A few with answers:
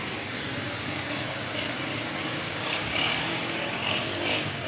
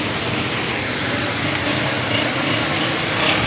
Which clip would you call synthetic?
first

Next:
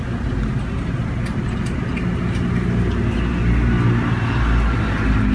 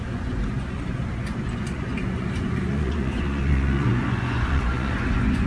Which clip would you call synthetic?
second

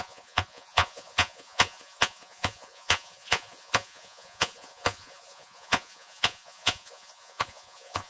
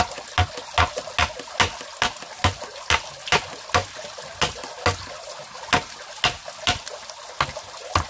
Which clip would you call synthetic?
first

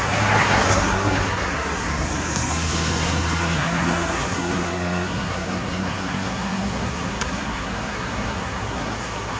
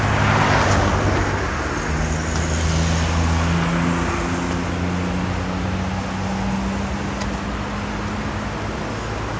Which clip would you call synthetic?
first